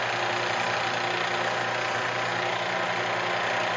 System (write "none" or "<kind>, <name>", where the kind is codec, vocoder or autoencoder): none